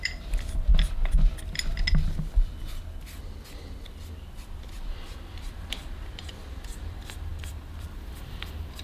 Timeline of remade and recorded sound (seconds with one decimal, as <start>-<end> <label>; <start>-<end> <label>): 0.0-0.7 remade; 0.7-4.1 recorded; 4.1-8.8 remade